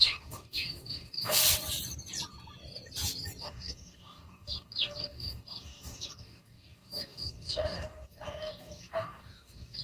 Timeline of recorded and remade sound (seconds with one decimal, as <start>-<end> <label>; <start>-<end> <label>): 0.0-1.4 remade; 1.4-3.4 recorded; 3.4-9.8 remade